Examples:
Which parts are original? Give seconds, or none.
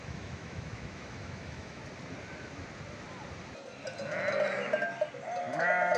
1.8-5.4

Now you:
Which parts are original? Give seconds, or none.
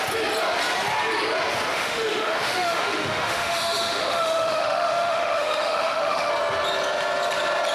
0.0-1.7; 6.3-7.7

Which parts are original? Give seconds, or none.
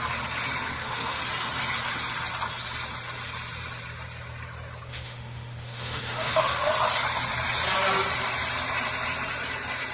0.0-0.7; 1.2-4.9; 6.7-9.9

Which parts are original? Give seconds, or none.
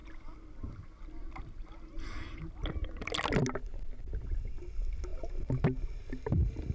0.0-6.7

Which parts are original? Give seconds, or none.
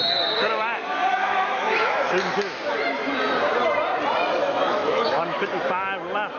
0.0-1.2; 2.1-4.4; 5.5-6.4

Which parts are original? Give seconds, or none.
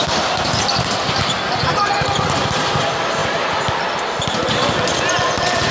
0.0-5.7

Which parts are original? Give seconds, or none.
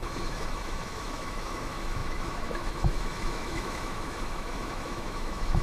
none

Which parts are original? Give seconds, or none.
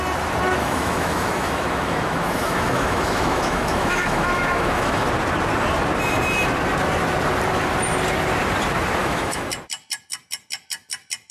0.0-0.6; 5.1-9.0; 9.5-11.3